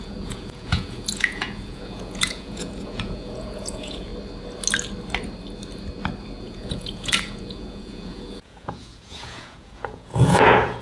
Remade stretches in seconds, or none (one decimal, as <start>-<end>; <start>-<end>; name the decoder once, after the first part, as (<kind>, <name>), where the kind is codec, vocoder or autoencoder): 0.0-4.1 (vocoder, Vocos); 6.4-10.8